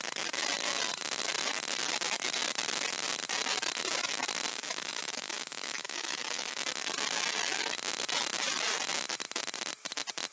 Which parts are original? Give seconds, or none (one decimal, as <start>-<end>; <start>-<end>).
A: 0.0-4.5; 6.6-10.3